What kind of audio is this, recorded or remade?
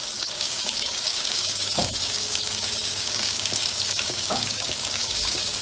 remade